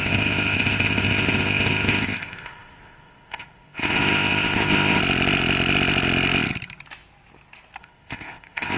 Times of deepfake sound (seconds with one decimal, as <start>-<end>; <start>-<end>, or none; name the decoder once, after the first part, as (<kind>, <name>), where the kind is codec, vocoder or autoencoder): 0.0-5.0 (codec, ZipCodec); 7.8-8.8